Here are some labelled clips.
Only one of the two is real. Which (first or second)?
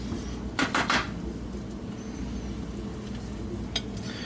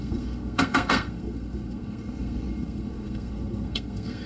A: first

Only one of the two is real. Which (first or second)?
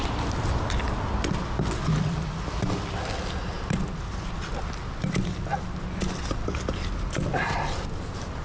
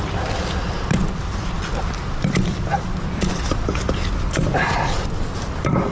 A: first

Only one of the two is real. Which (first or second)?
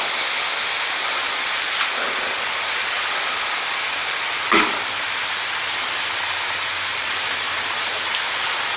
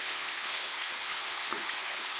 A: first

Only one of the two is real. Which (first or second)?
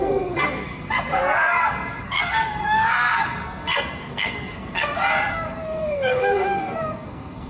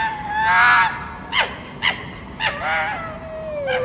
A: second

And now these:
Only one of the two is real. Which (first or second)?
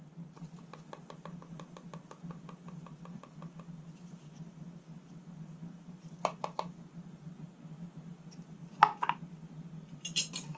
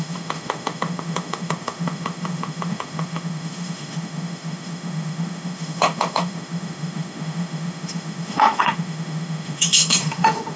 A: first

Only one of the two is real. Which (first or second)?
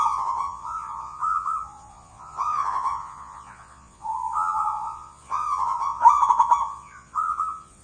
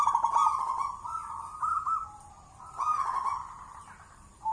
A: second